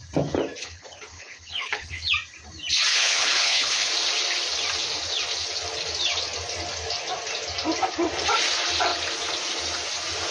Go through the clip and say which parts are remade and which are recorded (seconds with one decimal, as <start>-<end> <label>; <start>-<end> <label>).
0.0-0.6 recorded; 0.6-2.1 remade; 2.1-2.9 recorded; 2.9-3.9 remade; 3.9-10.3 recorded

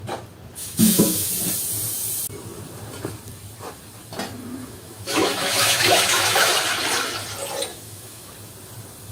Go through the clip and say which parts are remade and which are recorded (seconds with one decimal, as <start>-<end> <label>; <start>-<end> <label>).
0.0-0.6 recorded; 0.6-1.3 remade; 1.3-4.6 recorded; 4.6-6.5 remade; 6.5-7.7 recorded; 7.7-8.3 remade; 8.3-9.1 recorded

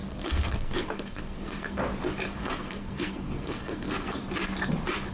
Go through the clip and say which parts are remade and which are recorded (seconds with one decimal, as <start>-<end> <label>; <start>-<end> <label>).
0.0-1.8 remade; 1.8-2.4 recorded; 2.4-4.2 remade; 4.2-5.1 recorded

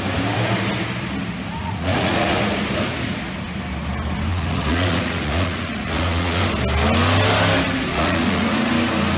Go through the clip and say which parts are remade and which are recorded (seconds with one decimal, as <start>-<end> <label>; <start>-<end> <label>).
0.0-1.6 recorded; 1.6-2.4 remade; 2.4-4.3 recorded; 4.3-6.4 remade; 6.4-7.9 recorded; 7.9-8.7 remade; 8.7-9.2 recorded